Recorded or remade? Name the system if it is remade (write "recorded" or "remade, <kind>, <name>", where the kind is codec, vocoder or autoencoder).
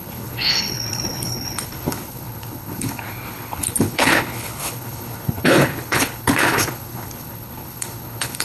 remade, codec, HILCodec